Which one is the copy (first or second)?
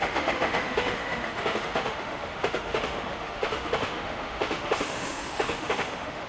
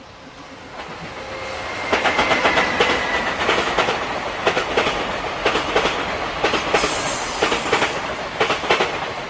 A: first